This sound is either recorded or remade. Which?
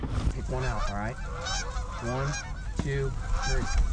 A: recorded